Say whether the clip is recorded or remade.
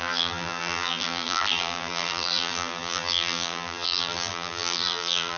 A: remade